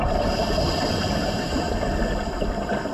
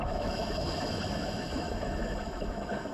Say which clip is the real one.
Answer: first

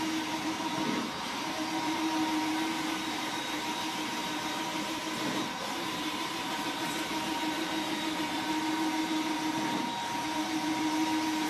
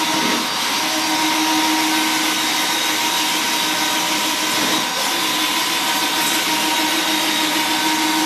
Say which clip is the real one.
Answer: second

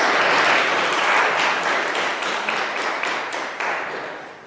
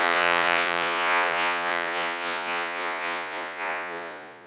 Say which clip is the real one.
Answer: first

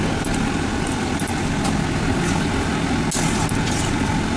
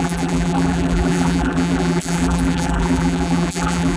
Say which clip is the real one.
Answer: first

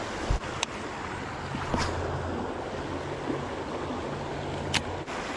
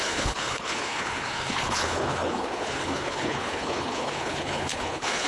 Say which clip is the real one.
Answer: first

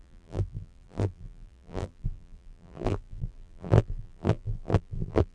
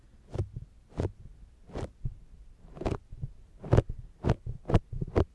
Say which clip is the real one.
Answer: second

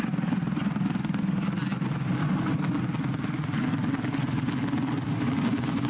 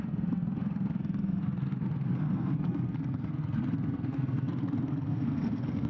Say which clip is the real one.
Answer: first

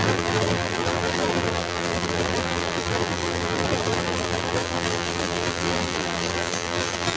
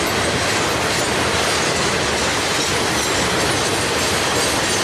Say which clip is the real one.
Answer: second